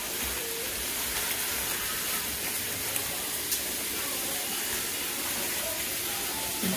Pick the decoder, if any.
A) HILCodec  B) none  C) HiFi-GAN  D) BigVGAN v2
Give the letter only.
B